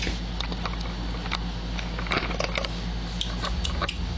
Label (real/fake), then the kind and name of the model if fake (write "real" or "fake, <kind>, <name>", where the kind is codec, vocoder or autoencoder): real